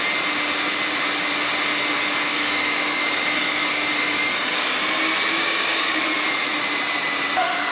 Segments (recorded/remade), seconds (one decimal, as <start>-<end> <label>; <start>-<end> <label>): 0.0-2.3 recorded; 2.3-4.9 remade; 4.9-5.4 recorded; 5.4-6.0 remade; 6.0-7.7 recorded